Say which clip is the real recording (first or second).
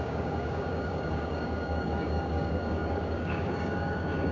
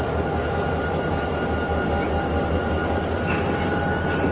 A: second